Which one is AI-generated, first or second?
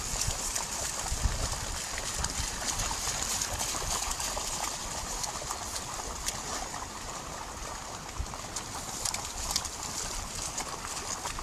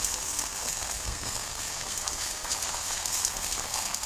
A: second